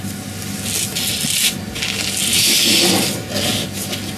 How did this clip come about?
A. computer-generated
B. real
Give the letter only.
B